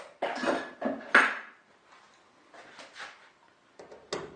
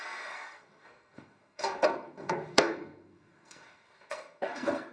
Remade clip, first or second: second